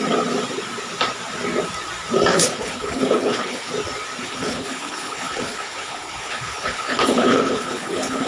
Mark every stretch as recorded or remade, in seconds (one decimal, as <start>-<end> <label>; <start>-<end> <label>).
0.0-2.3 recorded; 2.3-3.7 remade; 3.7-4.2 recorded; 4.2-8.3 remade